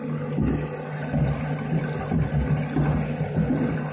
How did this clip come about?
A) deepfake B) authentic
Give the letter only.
B